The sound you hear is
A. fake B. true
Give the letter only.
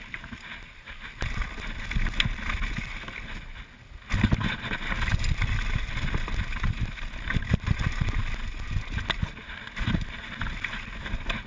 B